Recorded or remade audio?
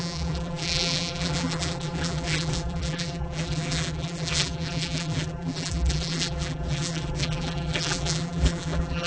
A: remade